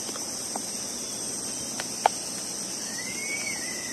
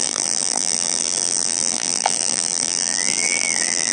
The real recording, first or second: first